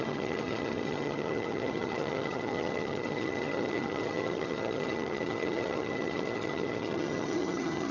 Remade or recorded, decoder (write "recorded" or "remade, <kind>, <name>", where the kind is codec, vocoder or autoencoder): remade, vocoder, HiFi-GAN